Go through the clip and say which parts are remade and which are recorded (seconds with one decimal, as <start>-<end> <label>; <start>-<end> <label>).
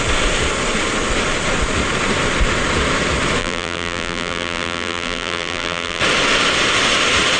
0.0-3.4 recorded; 3.4-6.0 remade; 6.0-7.4 recorded